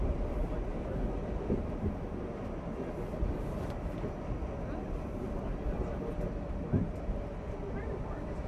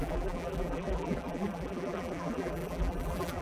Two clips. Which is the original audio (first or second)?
first